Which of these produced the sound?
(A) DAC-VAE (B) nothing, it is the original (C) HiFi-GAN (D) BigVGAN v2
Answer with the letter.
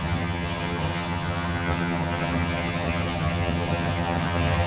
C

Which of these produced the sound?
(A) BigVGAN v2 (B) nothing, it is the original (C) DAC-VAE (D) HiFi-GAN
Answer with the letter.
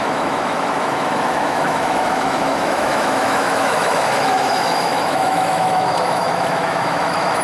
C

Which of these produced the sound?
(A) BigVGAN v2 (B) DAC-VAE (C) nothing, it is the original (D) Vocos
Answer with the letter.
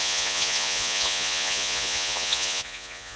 D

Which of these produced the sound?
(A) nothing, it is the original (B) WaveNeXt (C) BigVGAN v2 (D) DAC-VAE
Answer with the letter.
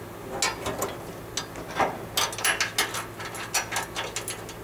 A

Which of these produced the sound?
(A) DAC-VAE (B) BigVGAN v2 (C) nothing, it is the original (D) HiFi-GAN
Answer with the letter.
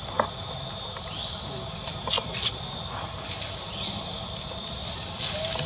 C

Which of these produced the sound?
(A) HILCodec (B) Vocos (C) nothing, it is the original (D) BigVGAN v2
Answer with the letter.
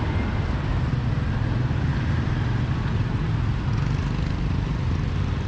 C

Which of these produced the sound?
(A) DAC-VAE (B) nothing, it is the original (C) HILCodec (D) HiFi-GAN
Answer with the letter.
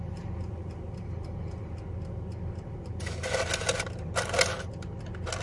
B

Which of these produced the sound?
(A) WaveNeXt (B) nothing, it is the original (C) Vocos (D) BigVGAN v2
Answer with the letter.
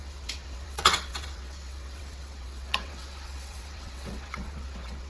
A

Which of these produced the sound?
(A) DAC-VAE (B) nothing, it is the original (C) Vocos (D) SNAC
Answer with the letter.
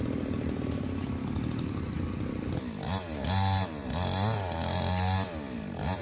B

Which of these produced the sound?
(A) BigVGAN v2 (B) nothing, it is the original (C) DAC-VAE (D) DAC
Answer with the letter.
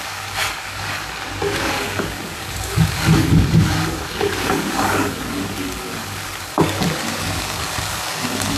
D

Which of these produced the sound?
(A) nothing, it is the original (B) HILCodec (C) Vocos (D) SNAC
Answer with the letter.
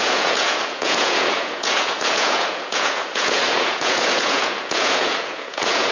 C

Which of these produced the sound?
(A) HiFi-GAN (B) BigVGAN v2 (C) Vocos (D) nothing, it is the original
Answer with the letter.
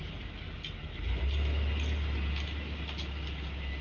D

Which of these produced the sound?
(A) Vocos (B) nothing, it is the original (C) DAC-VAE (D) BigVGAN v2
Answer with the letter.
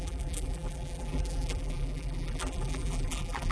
D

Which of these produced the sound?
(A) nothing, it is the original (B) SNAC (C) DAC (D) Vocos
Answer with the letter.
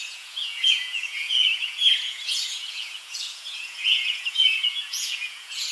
D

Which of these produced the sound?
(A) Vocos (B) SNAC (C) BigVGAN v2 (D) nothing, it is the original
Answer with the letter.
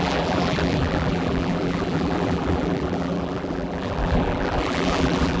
C